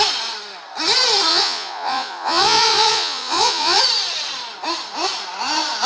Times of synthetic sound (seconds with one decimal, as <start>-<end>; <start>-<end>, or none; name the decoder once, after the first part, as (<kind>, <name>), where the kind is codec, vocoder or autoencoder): 1.3-3.8 (vocoder, Vocos)